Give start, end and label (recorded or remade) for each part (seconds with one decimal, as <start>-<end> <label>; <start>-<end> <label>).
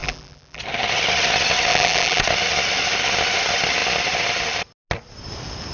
0.0-0.6 remade; 0.6-1.7 recorded; 1.7-2.2 remade; 2.2-5.7 recorded